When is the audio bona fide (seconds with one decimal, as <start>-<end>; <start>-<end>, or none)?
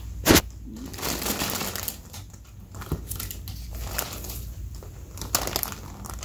0.0-6.2